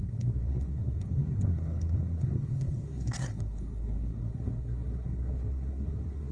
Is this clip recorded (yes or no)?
no